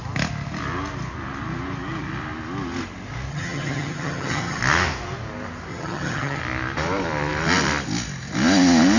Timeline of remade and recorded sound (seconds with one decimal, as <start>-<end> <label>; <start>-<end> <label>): 0.0-3.3 recorded; 3.3-4.6 remade; 4.6-5.7 recorded; 5.7-6.4 remade; 6.4-9.0 recorded